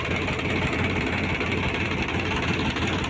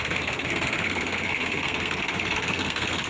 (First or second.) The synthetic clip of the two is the second